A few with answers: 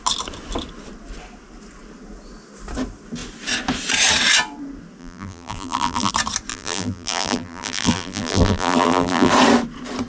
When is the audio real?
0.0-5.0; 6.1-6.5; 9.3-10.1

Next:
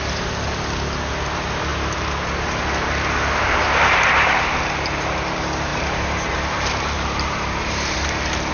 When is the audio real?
0.0-5.7